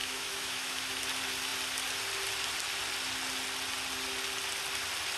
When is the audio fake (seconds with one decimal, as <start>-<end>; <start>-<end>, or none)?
0.0-1.0